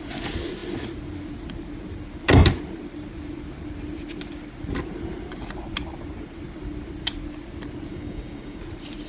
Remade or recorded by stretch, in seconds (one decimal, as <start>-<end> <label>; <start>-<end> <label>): 0.0-7.9 recorded; 7.9-8.6 remade; 8.6-9.1 recorded